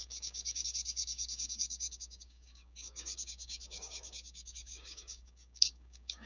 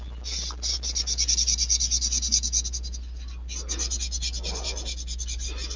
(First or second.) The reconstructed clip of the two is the first